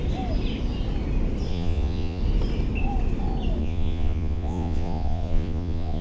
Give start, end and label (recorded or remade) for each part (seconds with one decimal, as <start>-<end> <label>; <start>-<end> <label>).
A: 0.0-1.5 recorded; 1.5-2.2 remade; 2.2-3.6 recorded; 3.6-6.0 remade